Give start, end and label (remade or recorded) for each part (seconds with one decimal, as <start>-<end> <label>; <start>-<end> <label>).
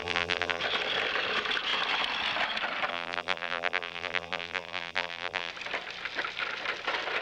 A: 0.0-0.6 remade; 0.6-2.9 recorded; 2.9-5.5 remade; 5.5-7.2 recorded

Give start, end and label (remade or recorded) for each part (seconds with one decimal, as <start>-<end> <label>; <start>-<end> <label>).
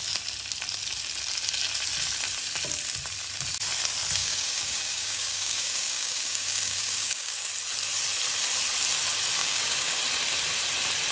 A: 0.0-4.2 recorded; 4.2-7.5 remade; 7.5-9.4 recorded; 9.4-10.0 remade; 10.0-11.1 recorded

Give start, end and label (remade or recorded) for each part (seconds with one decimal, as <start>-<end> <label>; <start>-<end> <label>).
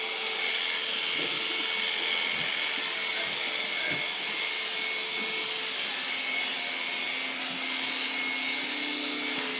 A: 0.0-3.1 recorded; 3.1-4.5 remade; 4.5-9.6 recorded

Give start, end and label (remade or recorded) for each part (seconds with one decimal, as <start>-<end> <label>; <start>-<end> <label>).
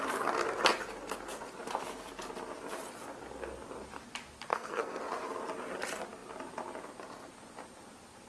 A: 0.0-4.5 recorded; 4.5-5.0 remade; 5.0-8.3 recorded